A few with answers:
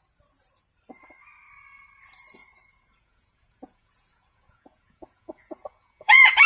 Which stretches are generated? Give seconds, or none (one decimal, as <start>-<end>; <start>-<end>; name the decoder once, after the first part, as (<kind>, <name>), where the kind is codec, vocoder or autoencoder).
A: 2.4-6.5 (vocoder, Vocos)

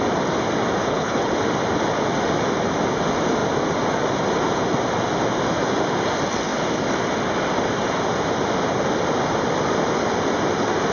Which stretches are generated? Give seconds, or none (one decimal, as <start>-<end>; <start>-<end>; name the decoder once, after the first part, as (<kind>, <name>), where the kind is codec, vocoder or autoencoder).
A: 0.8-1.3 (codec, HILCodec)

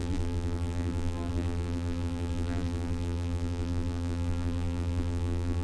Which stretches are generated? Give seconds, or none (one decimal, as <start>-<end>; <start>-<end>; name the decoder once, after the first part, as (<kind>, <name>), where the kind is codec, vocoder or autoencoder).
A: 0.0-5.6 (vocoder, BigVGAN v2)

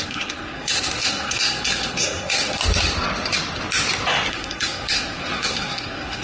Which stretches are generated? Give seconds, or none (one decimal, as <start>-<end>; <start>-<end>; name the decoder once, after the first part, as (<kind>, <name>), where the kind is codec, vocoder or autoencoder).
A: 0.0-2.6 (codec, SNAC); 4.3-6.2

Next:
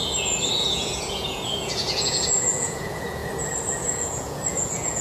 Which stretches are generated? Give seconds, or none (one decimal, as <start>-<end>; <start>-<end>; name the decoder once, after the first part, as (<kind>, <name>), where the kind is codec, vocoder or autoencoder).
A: 0.0-3.2 (vocoder, Vocos); 3.8-5.0

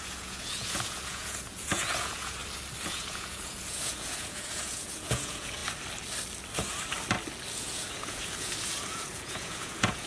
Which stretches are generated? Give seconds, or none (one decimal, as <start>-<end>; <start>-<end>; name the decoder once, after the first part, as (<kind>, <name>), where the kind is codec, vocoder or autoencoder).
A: 0.0-2.4 (vocoder, Vocos); 2.9-5.6; 7.5-10.1

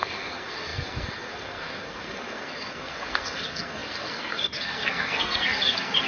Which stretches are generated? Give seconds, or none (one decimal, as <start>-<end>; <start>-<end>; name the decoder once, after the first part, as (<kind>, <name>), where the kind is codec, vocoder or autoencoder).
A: 0.0-6.1 (codec, SNAC)